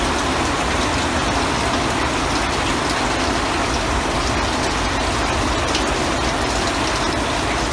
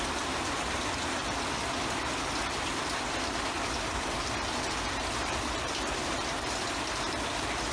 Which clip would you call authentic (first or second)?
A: first